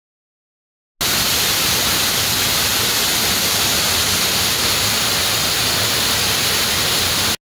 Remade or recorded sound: recorded